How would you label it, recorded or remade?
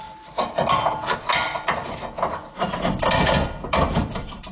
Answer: recorded